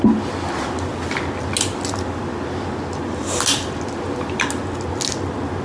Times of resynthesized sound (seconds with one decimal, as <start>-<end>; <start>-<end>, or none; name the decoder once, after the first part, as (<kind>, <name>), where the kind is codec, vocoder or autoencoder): none